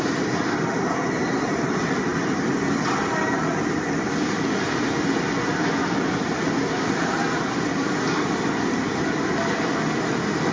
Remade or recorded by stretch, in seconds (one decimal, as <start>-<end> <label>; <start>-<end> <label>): 0.0-10.5 recorded